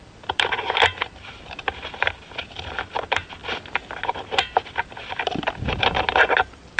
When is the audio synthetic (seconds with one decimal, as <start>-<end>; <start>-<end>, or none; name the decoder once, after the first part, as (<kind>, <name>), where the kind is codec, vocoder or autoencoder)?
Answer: 0.0-6.8 (vocoder, BigVGAN v2)